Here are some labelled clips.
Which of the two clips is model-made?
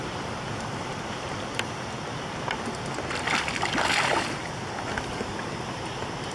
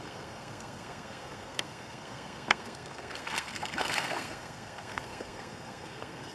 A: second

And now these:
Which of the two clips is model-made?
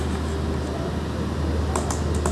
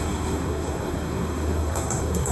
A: second